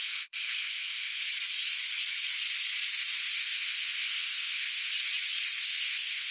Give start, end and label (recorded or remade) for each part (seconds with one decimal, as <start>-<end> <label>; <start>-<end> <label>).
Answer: 0.0-1.3 remade; 1.3-3.4 recorded; 3.4-4.9 remade; 4.9-5.6 recorded; 5.6-6.3 remade